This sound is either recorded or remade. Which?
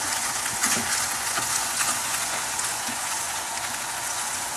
remade